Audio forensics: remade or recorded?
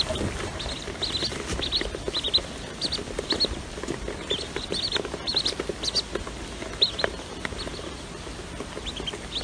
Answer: recorded